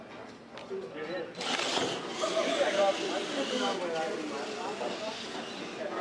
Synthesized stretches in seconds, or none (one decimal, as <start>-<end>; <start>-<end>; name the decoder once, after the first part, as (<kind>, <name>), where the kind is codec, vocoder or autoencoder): none